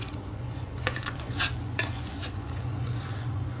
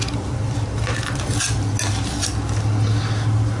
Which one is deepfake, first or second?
first